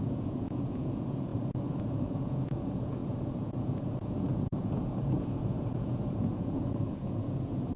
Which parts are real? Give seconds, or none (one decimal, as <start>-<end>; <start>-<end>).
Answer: none